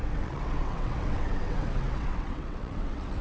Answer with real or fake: fake